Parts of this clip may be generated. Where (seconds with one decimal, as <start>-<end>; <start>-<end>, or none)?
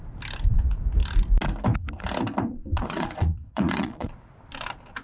2.5-4.2